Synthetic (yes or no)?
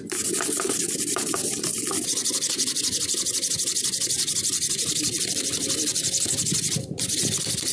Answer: yes